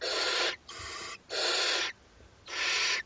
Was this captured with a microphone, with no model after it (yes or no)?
yes